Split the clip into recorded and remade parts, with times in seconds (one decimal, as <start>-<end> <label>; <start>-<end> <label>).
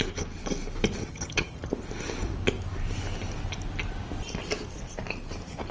0.0-1.0 recorded; 1.0-1.7 remade; 1.7-5.7 recorded